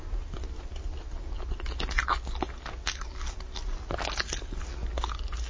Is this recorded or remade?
recorded